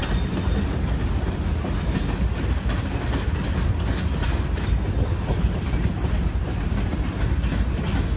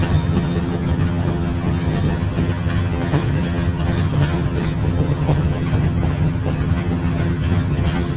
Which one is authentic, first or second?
first